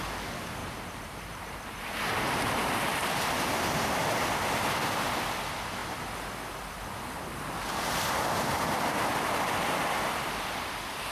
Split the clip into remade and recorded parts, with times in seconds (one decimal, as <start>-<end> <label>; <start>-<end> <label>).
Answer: 0.0-0.6 recorded; 0.6-1.9 remade; 1.9-11.1 recorded